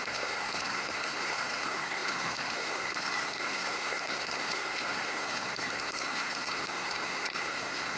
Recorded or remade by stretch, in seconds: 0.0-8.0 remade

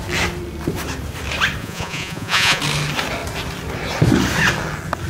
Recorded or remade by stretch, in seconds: 0.0-1.6 recorded; 1.6-2.6 remade; 2.6-5.1 recorded

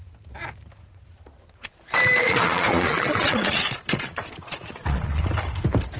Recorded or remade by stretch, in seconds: 0.0-2.2 recorded; 2.2-5.2 remade; 5.2-6.0 recorded